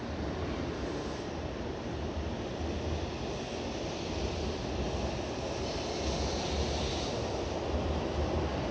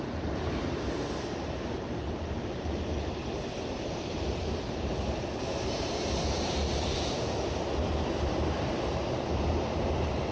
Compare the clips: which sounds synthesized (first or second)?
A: second